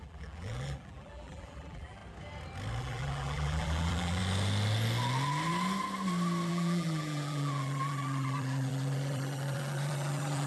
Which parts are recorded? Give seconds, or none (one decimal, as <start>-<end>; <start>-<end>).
2.0-2.8; 4.2-6.5